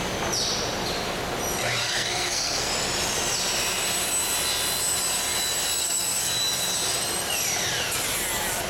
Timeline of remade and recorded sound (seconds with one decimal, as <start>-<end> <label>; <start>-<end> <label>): 0.0-1.8 recorded; 1.8-2.7 remade; 2.7-5.8 recorded; 5.8-6.3 remade; 6.3-8.7 recorded